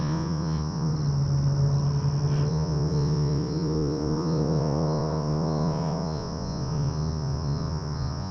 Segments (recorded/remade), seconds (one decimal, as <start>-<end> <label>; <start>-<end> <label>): 0.0-0.9 remade; 0.9-2.5 recorded; 2.5-8.3 remade